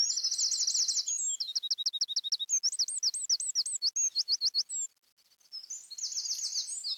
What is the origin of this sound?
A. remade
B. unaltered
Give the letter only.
B